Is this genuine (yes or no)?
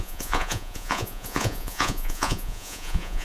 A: no